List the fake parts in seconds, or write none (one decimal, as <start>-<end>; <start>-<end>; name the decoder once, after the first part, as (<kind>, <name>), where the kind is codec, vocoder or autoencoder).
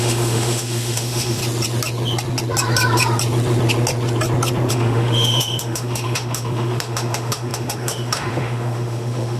0.0-1.4 (autoencoder, DAC-VAE); 4.7-9.4